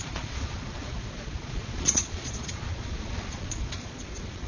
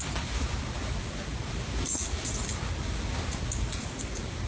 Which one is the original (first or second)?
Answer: second